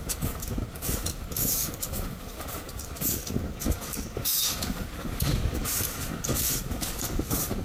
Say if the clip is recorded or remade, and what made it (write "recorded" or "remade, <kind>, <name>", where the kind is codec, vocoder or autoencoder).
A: remade, codec, DAC